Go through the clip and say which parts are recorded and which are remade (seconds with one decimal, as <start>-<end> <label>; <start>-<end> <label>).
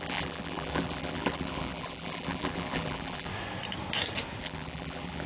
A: 0.0-3.3 remade; 3.3-4.4 recorded; 4.4-5.3 remade